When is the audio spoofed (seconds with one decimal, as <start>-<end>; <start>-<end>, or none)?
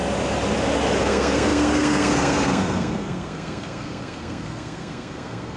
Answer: 1.0-5.6